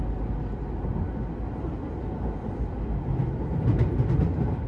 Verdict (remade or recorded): recorded